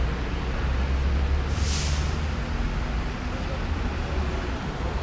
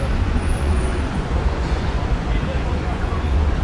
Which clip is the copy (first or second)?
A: second